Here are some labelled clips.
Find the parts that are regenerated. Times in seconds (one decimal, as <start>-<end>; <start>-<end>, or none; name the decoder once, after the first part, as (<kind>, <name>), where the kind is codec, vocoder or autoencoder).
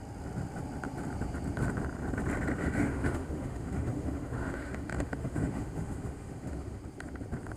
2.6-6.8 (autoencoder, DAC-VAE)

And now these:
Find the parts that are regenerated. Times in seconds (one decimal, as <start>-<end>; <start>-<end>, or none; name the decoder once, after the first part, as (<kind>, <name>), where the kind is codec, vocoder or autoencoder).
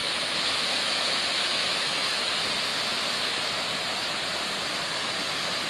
0.0-2.3 (autoencoder, DAC-VAE)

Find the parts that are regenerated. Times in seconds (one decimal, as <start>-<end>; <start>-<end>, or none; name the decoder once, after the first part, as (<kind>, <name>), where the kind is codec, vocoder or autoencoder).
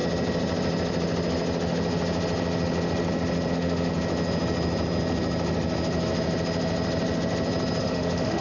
3.5-3.9 (autoencoder, DAC-VAE); 7.8-8.4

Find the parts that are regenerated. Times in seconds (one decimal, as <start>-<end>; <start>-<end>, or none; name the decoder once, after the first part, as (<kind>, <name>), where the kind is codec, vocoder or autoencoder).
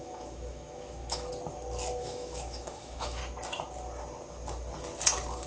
0.0-1.3 (autoencoder, DAC-VAE); 2.0-3.2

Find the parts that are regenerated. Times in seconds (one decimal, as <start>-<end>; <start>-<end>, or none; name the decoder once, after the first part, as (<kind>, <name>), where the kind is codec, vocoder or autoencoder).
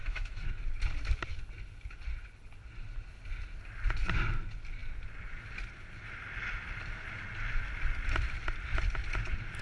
0.0-0.5 (autoencoder, DAC-VAE)